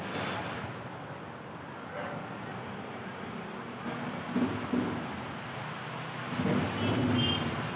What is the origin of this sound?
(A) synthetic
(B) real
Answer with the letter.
B